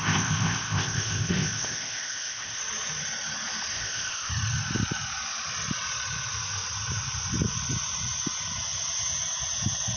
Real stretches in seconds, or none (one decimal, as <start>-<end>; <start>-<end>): 2.6-3.7; 4.3-10.0